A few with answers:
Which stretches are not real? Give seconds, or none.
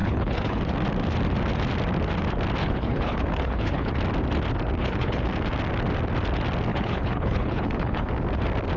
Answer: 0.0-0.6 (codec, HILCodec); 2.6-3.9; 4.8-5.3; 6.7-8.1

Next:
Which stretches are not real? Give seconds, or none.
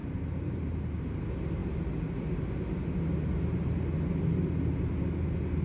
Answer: 0.0-0.7 (vocoder, BigVGAN v2)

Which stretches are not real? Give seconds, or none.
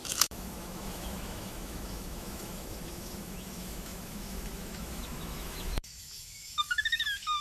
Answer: 0.0-7.4 (autoencoder, DAC-VAE)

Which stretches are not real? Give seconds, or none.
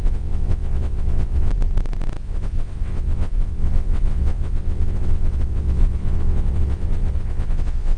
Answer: 0.0-1.5 (vocoder, WaveNeXt); 2.2-8.0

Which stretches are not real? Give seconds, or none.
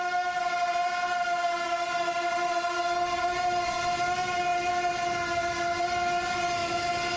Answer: none